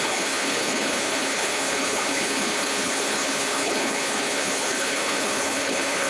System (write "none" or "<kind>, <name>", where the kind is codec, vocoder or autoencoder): codec, HILCodec